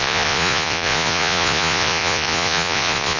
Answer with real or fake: fake